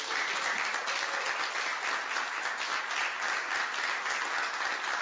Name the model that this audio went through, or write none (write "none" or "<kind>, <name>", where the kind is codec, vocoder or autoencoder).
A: none